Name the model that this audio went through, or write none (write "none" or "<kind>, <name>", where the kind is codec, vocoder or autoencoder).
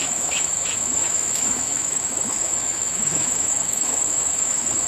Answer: autoencoder, DAC-VAE